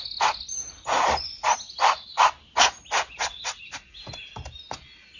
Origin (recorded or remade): recorded